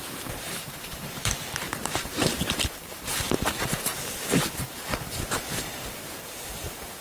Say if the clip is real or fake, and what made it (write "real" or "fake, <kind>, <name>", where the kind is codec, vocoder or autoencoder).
fake, vocoder, BigVGAN v2